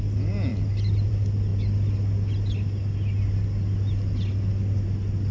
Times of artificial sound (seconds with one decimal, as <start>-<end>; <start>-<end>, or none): none